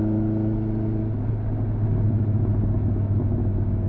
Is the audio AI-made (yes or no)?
no